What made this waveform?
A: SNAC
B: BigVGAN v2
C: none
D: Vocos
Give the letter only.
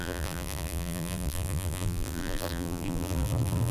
B